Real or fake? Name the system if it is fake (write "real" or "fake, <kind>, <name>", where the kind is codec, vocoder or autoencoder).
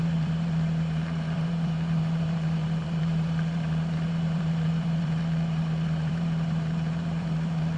fake, vocoder, BigVGAN v2